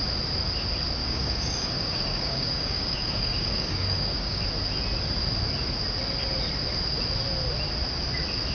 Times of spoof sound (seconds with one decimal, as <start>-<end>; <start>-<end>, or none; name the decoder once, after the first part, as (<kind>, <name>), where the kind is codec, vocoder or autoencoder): 1.0-4.4 (codec, DAC)